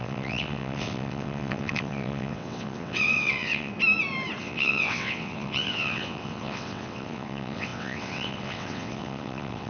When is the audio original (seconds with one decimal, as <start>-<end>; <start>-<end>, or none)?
3.7-4.4